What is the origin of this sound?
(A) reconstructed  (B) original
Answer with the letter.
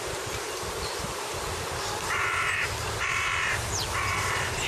A